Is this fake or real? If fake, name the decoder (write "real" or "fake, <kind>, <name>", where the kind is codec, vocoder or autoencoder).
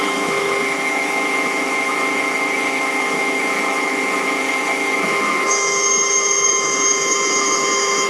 fake, autoencoder, DAC-VAE